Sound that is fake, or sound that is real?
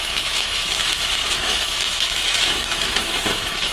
fake